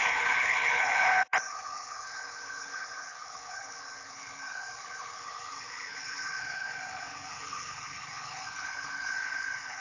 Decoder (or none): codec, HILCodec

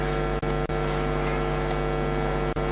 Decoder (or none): none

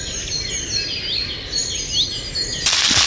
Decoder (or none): none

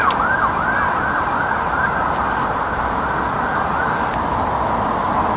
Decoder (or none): none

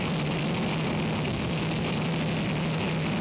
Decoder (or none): none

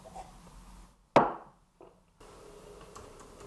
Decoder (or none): none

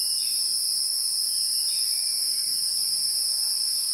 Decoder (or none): none